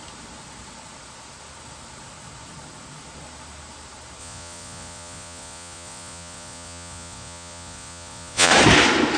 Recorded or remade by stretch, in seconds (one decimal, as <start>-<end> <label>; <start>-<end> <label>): 0.0-4.2 recorded; 4.2-8.5 remade; 8.5-9.2 recorded